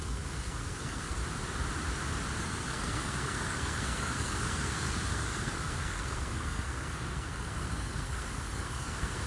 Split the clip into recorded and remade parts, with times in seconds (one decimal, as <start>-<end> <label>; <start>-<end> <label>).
0.0-1.2 remade; 1.2-2.4 recorded; 2.4-9.3 remade